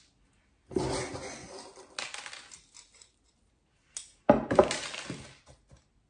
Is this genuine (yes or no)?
yes